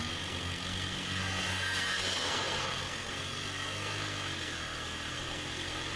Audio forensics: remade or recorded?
remade